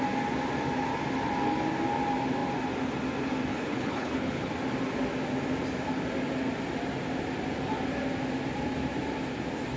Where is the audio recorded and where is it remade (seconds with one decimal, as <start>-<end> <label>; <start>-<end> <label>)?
0.0-3.5 recorded; 3.5-4.5 remade; 4.5-9.8 recorded